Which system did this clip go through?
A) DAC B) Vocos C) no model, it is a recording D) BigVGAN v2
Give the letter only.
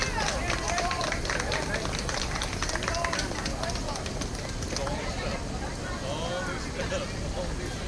C